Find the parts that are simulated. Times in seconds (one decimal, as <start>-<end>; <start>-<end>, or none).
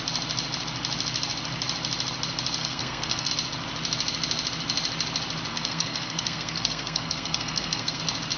2.6-3.3; 5.5-8.0